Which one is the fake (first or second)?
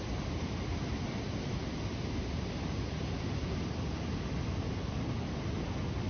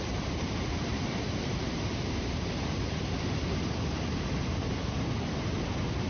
second